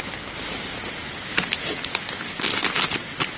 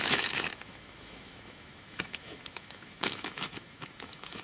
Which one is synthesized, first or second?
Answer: second